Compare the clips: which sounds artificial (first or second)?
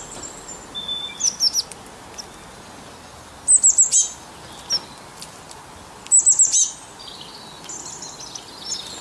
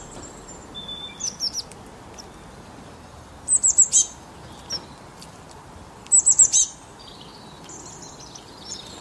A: second